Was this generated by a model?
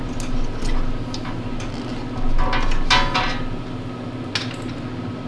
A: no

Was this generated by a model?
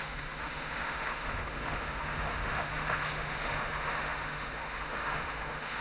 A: yes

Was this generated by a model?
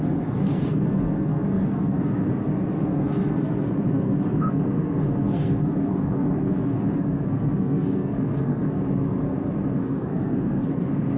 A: yes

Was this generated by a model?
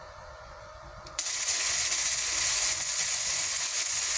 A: yes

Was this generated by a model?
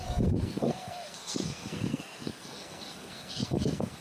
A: yes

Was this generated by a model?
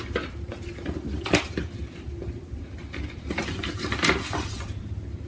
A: no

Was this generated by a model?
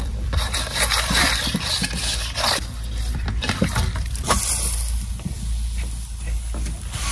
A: yes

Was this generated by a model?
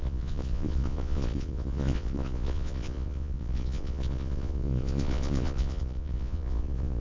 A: yes